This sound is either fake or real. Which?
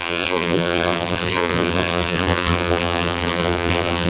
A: fake